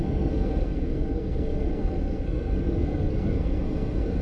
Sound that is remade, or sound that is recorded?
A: remade